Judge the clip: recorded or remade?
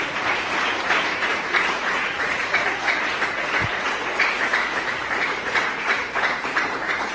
remade